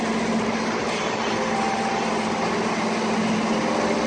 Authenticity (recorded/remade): recorded